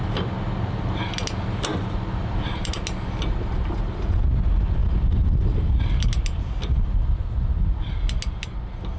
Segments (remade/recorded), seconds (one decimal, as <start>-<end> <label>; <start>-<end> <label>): 0.0-1.7 recorded; 1.7-2.7 remade; 2.7-9.0 recorded